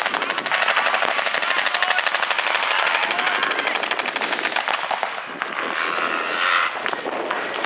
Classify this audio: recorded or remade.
recorded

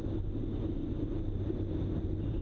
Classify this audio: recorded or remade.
recorded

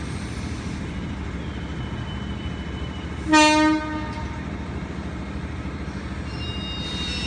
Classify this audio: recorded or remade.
recorded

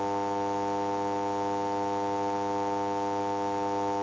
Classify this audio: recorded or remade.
recorded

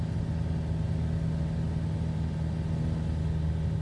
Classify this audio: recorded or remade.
recorded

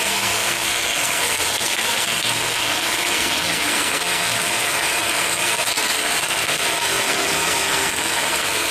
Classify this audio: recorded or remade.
remade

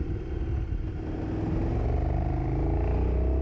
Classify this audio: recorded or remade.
recorded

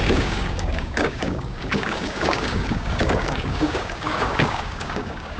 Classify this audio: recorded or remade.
remade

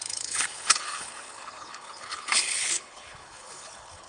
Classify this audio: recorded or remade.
remade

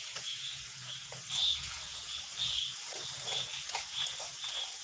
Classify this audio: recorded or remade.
remade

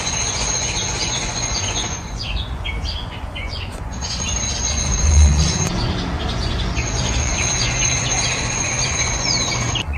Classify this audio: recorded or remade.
remade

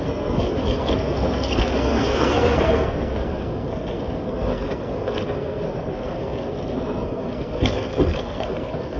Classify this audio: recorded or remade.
remade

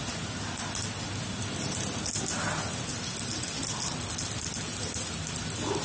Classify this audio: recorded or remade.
recorded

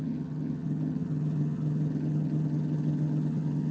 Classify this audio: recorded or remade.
remade